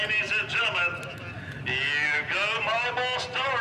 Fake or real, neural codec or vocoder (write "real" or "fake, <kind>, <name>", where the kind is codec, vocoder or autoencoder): real